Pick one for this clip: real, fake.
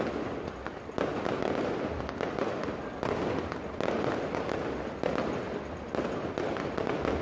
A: real